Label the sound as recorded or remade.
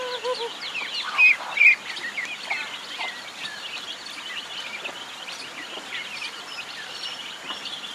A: recorded